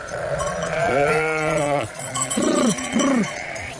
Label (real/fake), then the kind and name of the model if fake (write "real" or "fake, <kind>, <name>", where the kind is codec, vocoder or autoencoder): fake, vocoder, Vocos